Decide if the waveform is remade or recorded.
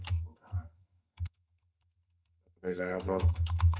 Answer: remade